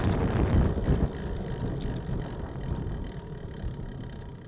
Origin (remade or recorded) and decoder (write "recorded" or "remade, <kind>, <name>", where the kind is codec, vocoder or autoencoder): recorded